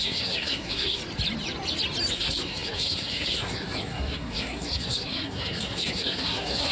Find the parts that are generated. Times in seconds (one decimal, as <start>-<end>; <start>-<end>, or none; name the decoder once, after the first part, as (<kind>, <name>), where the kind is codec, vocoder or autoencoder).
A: 0.0-1.0 (codec, SNAC); 2.1-6.7